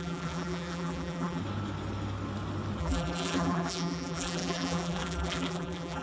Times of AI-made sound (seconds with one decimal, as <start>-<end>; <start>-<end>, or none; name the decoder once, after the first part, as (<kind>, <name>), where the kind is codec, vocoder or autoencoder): 0.0-1.4 (vocoder, BigVGAN v2); 2.8-6.0